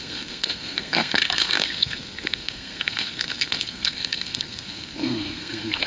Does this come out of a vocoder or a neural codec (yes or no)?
yes